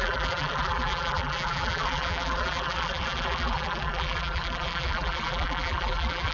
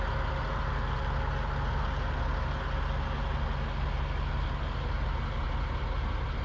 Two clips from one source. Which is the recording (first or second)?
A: second